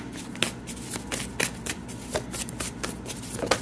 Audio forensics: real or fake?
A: real